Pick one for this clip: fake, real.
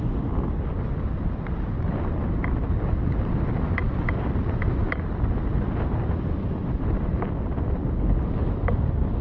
real